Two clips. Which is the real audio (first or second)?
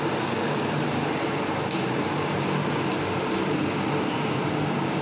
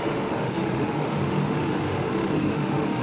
first